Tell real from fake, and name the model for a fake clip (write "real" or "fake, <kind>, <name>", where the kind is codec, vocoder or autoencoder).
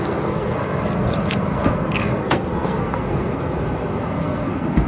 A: fake, codec, SNAC